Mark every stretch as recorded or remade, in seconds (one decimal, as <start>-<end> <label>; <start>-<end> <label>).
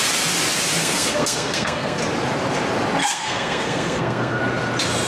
0.0-0.8 recorded; 0.8-2.0 remade; 2.0-3.0 recorded; 3.0-4.4 remade; 4.4-5.1 recorded